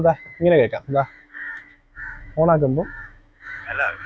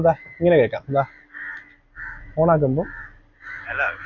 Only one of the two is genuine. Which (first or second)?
second